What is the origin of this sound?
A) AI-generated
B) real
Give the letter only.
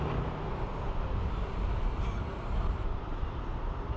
B